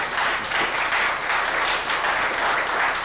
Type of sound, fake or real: real